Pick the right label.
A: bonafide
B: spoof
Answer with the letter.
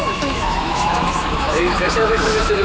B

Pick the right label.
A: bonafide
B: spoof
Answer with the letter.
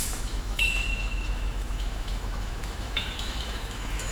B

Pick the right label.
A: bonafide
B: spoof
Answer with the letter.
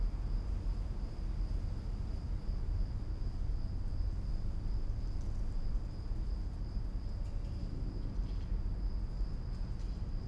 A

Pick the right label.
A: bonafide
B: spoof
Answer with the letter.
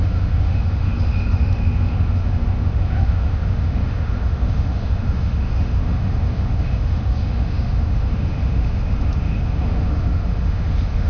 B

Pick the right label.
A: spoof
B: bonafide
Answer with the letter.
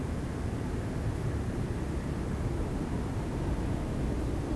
B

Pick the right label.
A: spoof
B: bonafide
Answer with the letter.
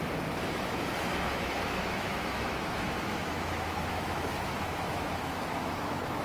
A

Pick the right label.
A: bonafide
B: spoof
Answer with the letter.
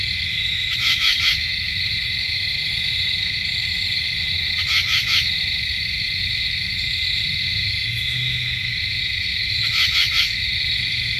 B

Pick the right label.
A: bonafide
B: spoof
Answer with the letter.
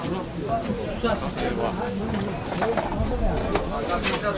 A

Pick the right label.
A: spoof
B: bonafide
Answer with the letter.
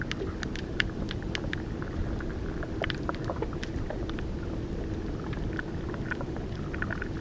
B